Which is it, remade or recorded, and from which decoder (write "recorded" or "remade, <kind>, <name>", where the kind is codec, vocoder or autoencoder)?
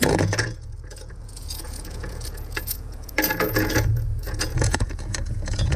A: remade, vocoder, Vocos